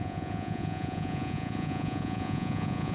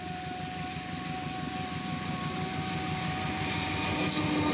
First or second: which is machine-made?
first